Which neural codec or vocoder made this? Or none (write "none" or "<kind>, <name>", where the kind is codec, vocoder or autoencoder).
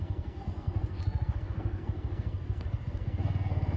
codec, SNAC